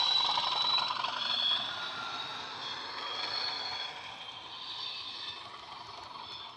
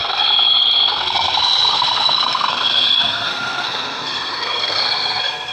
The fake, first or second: second